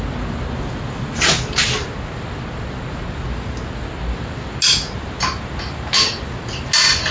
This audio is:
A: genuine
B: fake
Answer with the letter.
A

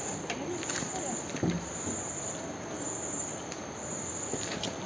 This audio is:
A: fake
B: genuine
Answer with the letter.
A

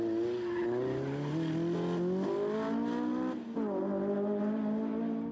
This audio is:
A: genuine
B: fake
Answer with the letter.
A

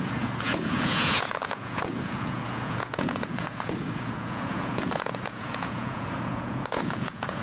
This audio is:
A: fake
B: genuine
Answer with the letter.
A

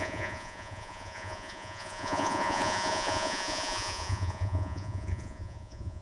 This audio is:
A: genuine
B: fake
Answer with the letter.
B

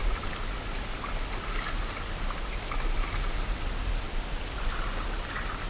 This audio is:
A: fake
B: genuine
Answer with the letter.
B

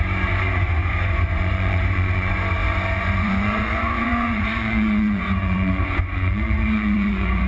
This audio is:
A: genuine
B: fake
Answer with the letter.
B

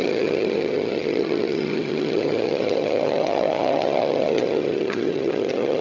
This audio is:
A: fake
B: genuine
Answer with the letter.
A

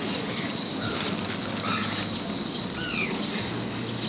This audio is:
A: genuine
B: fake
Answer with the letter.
A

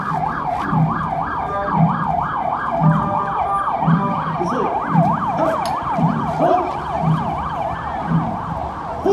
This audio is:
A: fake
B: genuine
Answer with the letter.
B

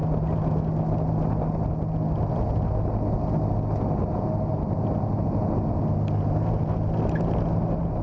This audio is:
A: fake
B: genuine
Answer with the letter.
B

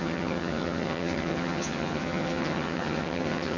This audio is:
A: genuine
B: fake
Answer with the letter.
B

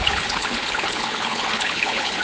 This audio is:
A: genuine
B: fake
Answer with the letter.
B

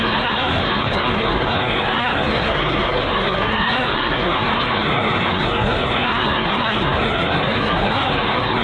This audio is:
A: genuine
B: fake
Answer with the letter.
B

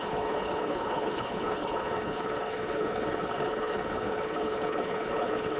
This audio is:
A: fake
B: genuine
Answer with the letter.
A